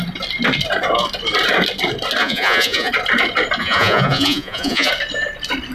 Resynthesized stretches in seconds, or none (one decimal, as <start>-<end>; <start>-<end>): 2.2-2.9; 3.6-4.9